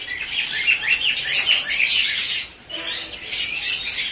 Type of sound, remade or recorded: recorded